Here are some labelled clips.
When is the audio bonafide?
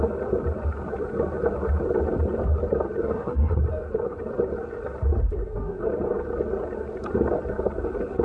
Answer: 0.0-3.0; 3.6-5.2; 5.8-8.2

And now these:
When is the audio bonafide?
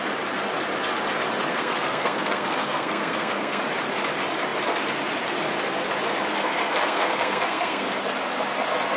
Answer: 0.0-1.5; 3.6-6.3; 7.9-9.0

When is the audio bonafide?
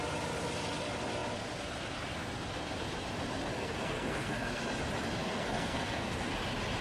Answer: 0.0-3.5; 4.6-5.2; 6.3-6.8